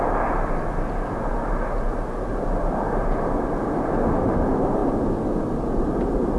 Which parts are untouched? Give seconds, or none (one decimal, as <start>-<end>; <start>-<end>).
0.0-6.4